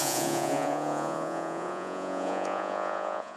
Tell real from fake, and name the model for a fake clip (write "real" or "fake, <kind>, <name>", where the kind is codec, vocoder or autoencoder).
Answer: fake, vocoder, Vocos